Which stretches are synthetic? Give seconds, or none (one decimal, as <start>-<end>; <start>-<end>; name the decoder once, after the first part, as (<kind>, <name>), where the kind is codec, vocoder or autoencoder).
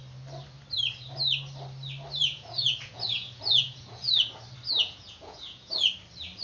2.2-4.1 (vocoder, Vocos); 4.8-5.9